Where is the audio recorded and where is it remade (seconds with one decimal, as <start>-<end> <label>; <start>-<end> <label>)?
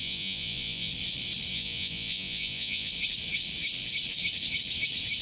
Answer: 0.0-0.9 remade; 0.9-1.5 recorded; 1.5-2.9 remade; 2.9-5.2 recorded